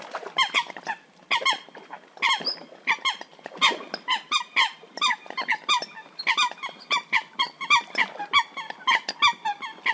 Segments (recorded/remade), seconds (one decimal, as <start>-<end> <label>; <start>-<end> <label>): 0.0-9.9 recorded